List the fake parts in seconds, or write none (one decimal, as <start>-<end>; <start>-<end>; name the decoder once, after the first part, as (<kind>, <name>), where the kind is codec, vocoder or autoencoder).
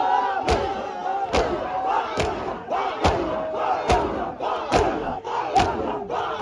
4.9-5.4 (codec, DAC)